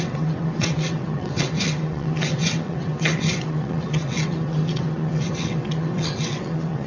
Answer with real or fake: fake